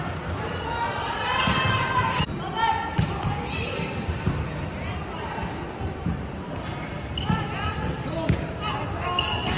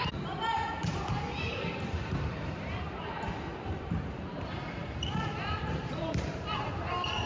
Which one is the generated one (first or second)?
second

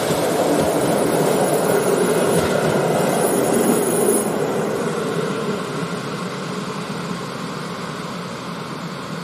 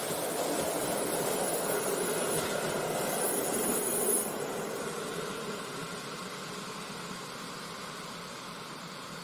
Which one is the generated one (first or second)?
second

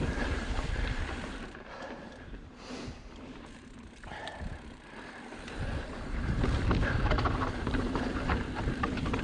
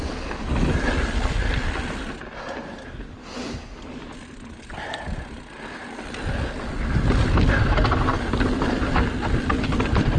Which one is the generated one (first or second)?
first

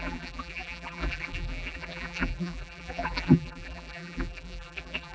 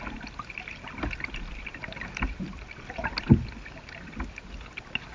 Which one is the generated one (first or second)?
first